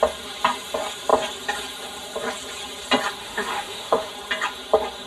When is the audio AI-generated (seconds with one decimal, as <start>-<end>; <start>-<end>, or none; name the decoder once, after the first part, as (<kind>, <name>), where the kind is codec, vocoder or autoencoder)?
3.2-4.1 (autoencoder, DAC-VAE)